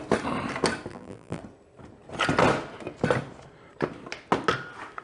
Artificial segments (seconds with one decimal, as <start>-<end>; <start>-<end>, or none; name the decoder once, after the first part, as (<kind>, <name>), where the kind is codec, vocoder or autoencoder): 0.9-1.4 (vocoder, BigVGAN v2)